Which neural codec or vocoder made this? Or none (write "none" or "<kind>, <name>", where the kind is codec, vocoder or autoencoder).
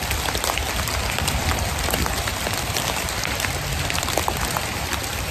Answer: vocoder, BigVGAN v2